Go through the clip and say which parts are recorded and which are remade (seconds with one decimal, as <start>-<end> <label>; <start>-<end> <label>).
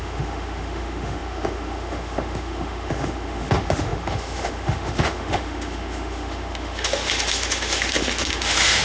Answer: 0.0-8.8 remade